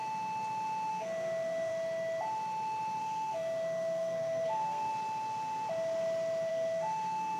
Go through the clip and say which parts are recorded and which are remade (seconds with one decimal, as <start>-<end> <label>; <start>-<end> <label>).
0.0-0.9 recorded; 0.9-1.7 remade; 1.7-3.0 recorded; 3.0-4.9 remade; 4.9-6.5 recorded; 6.5-7.4 remade